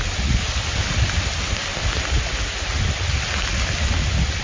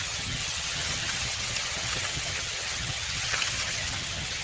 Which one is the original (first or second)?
first